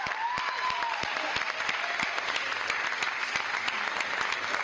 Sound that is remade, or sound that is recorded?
recorded